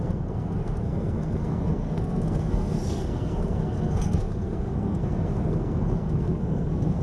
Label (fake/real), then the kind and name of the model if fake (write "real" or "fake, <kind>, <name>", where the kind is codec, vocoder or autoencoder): fake, codec, SNAC